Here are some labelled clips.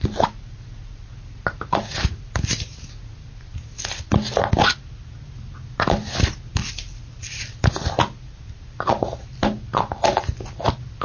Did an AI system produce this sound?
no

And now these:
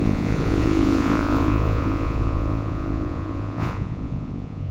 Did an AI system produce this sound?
yes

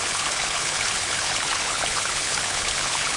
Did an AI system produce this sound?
yes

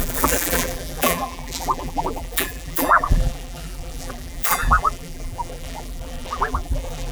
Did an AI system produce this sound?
yes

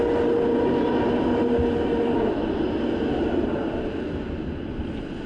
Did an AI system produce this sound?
no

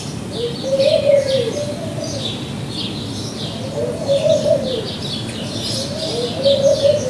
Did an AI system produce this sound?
no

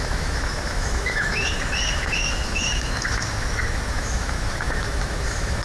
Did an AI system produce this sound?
yes